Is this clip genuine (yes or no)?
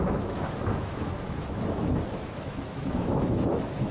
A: no